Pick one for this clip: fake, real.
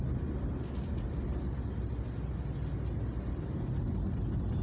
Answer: real